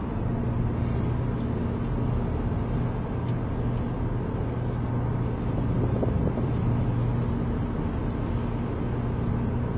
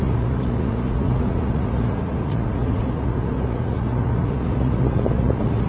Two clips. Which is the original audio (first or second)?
first